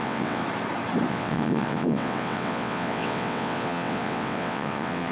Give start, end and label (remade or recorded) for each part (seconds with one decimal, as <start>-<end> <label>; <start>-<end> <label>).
0.0-0.4 remade; 0.4-1.1 recorded; 1.1-5.1 remade